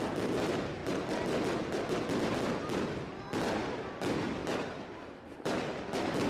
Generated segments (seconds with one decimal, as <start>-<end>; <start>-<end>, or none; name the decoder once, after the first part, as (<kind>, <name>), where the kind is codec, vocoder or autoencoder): none